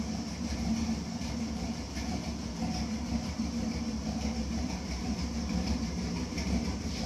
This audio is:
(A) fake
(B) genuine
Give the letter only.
A